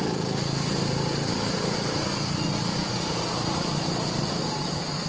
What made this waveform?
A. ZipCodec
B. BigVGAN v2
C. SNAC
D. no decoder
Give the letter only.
D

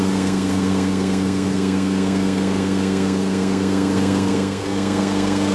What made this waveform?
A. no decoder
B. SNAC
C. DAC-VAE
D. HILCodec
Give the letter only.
B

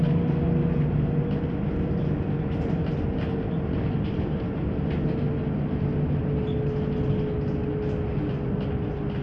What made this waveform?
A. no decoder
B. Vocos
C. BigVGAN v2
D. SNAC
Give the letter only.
A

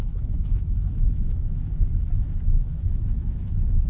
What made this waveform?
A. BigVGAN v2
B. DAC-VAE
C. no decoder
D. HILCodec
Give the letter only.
B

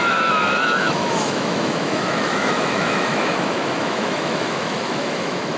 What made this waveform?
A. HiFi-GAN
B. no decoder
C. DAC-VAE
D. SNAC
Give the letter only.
C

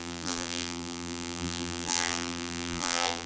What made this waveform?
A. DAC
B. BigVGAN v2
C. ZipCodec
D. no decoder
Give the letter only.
B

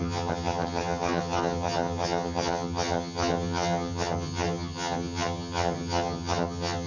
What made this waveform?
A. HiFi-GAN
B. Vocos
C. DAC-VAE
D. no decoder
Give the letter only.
A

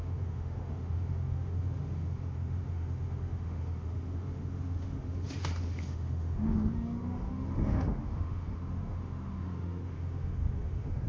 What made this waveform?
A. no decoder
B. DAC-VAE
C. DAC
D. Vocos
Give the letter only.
B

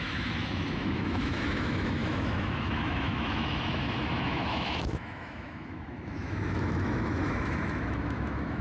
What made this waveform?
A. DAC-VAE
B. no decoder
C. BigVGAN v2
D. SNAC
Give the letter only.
A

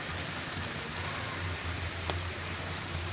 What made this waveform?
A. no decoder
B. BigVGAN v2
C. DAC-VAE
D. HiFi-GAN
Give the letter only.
B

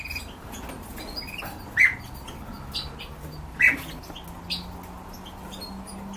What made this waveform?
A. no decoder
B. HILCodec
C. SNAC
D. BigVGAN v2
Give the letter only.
A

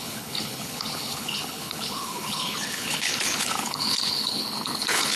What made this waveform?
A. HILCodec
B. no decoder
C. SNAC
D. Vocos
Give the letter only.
A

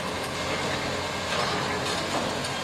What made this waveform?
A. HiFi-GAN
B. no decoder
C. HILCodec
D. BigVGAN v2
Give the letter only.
B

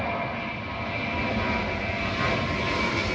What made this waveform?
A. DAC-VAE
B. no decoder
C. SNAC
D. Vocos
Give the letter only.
B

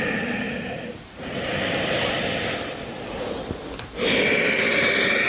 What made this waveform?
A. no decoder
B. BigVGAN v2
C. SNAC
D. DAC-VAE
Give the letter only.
A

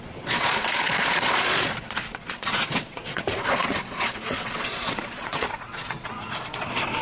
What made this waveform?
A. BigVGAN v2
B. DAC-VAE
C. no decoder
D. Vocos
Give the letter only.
D